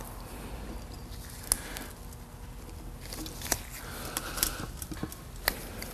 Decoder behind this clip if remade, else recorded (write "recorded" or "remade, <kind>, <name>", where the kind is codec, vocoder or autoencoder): recorded